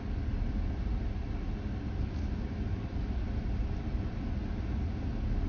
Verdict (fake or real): real